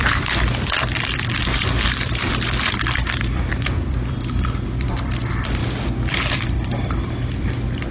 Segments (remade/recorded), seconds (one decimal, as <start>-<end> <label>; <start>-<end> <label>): 0.0-5.6 remade; 5.6-6.1 recorded; 6.1-7.9 remade